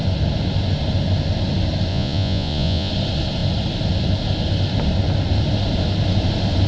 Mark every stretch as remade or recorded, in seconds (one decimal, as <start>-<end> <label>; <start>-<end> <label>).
0.0-1.9 recorded; 1.9-2.9 remade; 2.9-6.7 recorded